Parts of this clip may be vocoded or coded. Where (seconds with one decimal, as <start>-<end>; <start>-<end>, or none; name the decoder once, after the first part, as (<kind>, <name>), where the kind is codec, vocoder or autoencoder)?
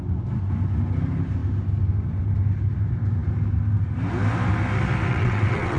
5.1-5.8 (vocoder, WaveNeXt)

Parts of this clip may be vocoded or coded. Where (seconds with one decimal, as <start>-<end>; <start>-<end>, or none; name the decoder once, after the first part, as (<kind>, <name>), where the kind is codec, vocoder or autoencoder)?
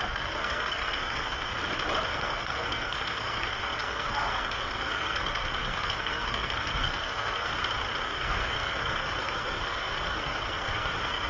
0.0-1.5 (codec, SNAC); 2.1-7.5; 8.0-11.3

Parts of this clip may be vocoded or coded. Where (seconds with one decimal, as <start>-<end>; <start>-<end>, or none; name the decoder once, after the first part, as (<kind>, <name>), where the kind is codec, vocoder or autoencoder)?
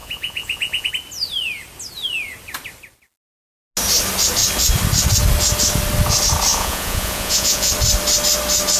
0.0-0.9 (vocoder, Vocos); 6.5-7.7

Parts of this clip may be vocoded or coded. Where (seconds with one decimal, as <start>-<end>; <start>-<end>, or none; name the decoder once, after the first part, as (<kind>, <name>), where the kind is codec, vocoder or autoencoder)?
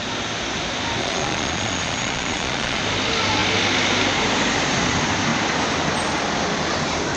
1.0-2.8 (vocoder, Vocos)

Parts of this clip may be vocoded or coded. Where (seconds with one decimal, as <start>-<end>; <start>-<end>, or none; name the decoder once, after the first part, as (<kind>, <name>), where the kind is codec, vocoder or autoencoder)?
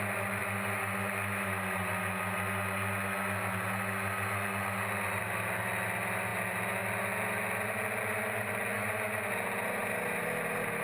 none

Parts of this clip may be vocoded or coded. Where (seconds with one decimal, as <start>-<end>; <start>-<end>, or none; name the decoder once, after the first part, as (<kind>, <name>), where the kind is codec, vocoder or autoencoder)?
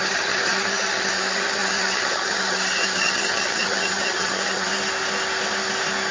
0.0-4.7 (vocoder, HiFi-GAN)